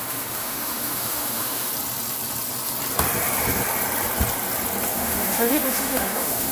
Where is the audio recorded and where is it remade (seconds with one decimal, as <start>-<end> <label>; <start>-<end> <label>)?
0.0-1.7 remade; 1.7-4.9 recorded; 4.9-6.5 remade